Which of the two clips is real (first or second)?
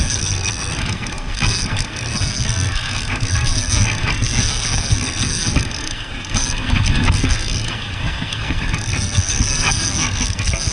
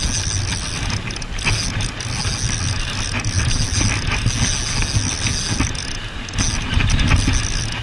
second